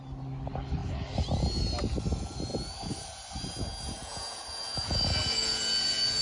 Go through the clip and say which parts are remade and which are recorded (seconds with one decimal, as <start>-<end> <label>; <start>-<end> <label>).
0.0-4.0 recorded; 4.0-6.2 remade